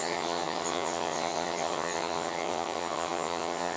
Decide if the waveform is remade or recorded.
remade